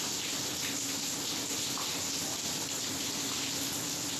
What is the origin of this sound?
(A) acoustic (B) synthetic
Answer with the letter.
A